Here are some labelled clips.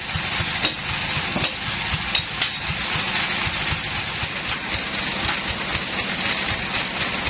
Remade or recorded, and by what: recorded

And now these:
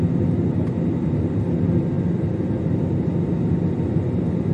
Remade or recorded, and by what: recorded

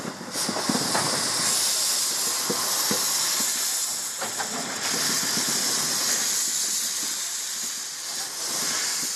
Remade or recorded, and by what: recorded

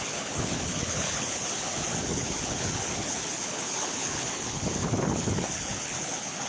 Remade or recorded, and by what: remade, codec, HILCodec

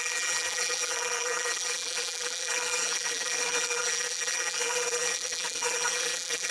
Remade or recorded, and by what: remade, vocoder, BigVGAN v2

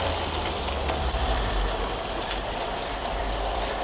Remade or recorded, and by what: remade, vocoder, BigVGAN v2